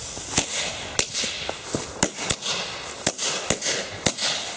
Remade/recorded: recorded